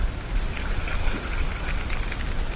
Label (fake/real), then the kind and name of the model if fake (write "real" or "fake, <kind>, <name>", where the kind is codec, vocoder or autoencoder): real